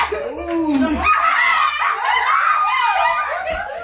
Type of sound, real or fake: real